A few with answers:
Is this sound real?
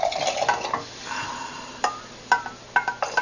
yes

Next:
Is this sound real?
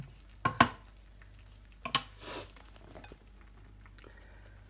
yes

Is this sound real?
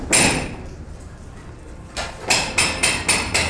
yes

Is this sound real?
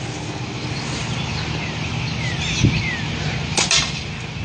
yes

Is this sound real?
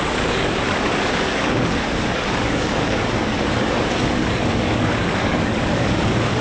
no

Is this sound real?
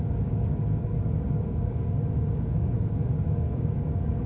no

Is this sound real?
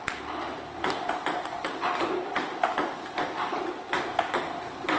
yes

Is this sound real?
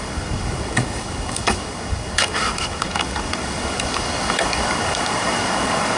no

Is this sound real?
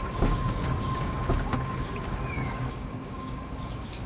no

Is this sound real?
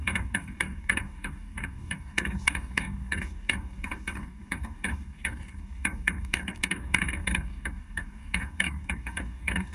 no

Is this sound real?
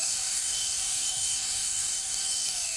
no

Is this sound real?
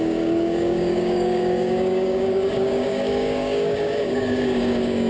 no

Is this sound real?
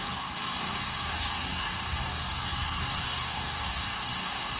no